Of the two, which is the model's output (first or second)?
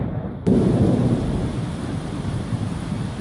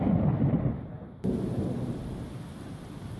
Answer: first